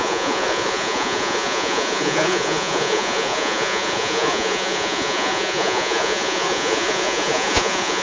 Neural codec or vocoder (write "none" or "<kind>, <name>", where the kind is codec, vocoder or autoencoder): vocoder, Vocos